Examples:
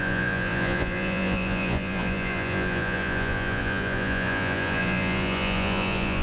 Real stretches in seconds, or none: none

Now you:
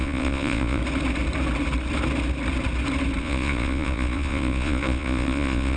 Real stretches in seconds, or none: 0.8-3.2

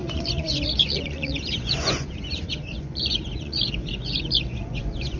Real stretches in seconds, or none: none

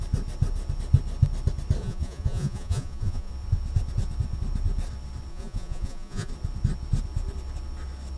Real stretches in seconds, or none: 0.0-1.8; 3.3-5.3; 6.3-8.2

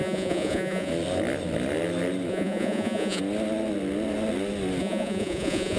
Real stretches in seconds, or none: 0.9-2.3; 3.2-4.8

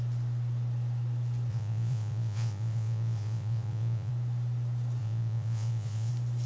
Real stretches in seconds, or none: 0.0-1.5; 4.1-5.0; 6.1-6.5

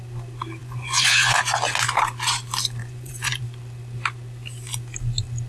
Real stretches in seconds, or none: 0.0-0.6; 1.4-2.8; 3.4-5.5